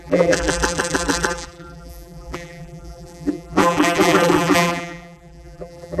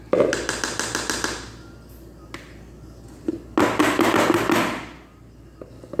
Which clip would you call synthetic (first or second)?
first